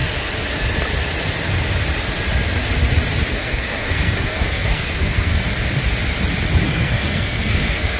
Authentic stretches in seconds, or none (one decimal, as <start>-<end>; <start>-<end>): 0.0-3.3; 5.3-6.6